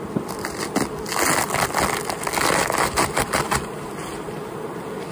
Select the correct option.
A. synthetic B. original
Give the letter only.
B